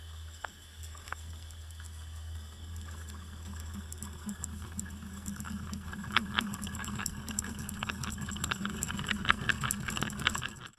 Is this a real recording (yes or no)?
no